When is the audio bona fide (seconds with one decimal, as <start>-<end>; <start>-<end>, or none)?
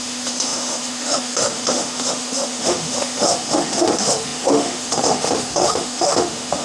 none